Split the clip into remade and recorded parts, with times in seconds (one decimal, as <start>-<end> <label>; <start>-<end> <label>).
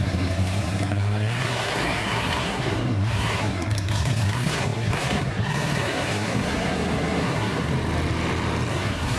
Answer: 0.0-7.7 remade; 7.7-8.7 recorded; 8.7-9.2 remade